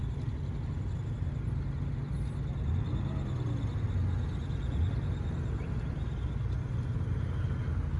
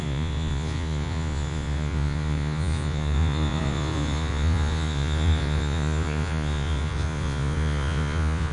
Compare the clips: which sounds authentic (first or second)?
first